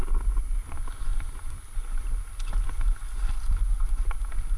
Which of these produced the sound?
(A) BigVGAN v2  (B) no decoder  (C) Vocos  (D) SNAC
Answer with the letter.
B